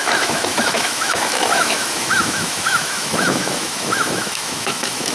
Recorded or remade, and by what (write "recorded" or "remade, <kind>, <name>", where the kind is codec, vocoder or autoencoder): remade, autoencoder, DAC-VAE